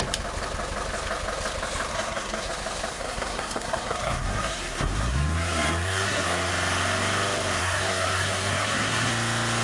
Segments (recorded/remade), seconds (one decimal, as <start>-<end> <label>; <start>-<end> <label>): 0.0-1.9 recorded; 1.9-2.5 remade; 2.5-2.9 recorded; 2.9-6.5 remade; 6.5-7.6 recorded; 7.6-9.1 remade; 9.1-9.6 recorded